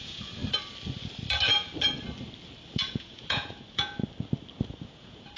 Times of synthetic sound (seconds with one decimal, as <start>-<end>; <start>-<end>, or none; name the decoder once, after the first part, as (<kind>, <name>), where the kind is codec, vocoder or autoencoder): 0.0-0.4 (vocoder, Vocos); 2.7-4.0; 4.7-5.4